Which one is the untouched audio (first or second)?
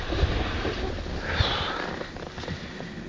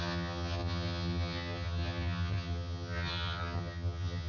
first